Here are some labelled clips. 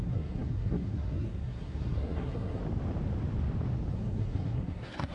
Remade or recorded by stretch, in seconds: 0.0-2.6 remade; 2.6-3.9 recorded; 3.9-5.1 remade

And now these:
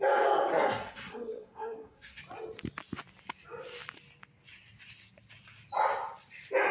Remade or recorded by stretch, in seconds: 0.0-0.5 recorded; 0.5-2.2 remade; 2.2-6.7 recorded

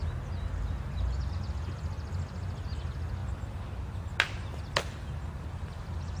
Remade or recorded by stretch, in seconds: 0.0-6.2 recorded